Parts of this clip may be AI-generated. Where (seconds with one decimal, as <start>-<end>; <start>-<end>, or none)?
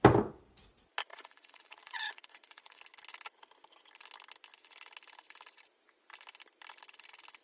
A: 1.1-2.8